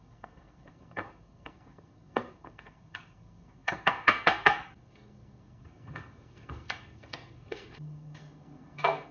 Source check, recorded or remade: remade